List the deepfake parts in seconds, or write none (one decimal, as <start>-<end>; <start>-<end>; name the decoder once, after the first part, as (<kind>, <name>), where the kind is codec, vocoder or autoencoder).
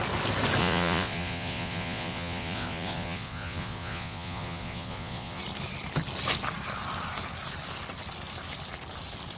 0.6-5.4 (vocoder, Vocos)